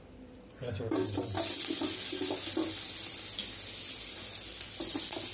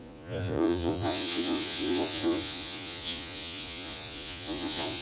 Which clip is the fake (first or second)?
second